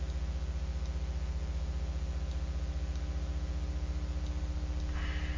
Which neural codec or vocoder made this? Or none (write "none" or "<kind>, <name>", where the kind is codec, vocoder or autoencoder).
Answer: none